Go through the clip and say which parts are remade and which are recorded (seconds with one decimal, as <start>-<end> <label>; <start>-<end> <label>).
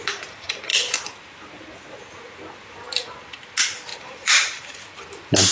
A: 0.0-3.9 recorded; 3.9-5.0 remade; 5.0-5.5 recorded